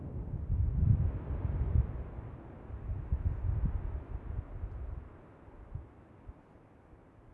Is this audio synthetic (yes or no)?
no